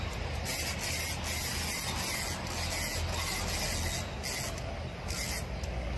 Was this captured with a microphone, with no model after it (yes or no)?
yes